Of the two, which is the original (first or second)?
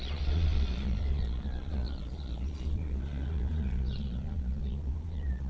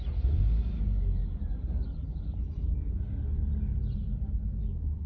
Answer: second